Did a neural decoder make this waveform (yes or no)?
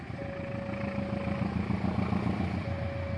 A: no